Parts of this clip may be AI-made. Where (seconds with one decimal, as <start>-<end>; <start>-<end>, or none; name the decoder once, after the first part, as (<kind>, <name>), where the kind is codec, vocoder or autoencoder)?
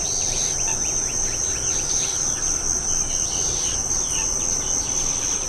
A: none